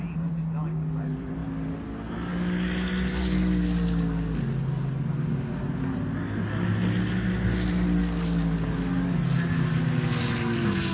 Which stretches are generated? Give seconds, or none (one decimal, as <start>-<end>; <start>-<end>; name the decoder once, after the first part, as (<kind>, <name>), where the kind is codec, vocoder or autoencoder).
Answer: 8.0-9.3 (codec, DAC)